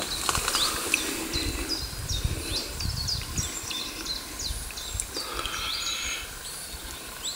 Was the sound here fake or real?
real